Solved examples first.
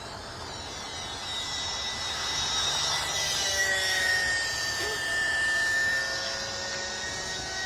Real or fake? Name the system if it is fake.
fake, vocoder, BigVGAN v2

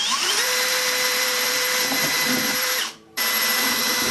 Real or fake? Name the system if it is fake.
fake, vocoder, BigVGAN v2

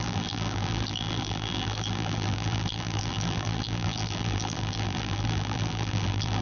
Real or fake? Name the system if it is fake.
fake, vocoder, BigVGAN v2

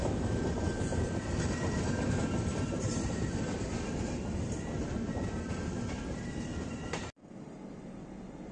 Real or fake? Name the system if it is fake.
real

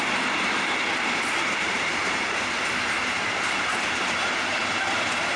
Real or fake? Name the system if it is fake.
fake, vocoder, BigVGAN v2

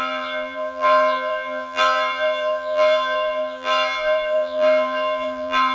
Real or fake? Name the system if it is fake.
fake, vocoder, BigVGAN v2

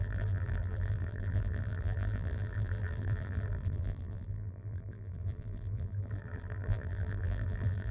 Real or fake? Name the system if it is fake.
fake, vocoder, BigVGAN v2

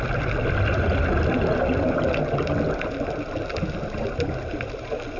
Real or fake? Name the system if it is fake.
real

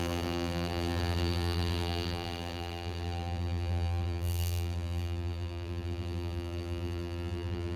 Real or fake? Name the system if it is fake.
fake, vocoder, BigVGAN v2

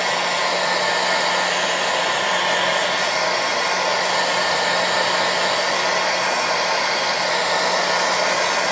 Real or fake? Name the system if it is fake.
real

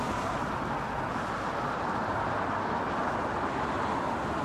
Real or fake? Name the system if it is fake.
real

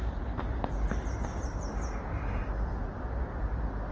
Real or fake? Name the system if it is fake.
real